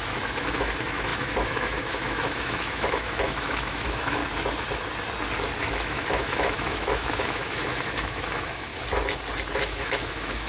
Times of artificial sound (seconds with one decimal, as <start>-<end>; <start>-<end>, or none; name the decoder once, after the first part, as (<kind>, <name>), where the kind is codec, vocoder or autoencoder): 0.0-4.2 (autoencoder, DAC-VAE); 5.6-8.7; 9.6-10.5